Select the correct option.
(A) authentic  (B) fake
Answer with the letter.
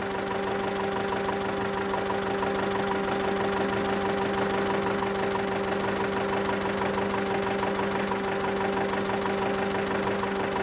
A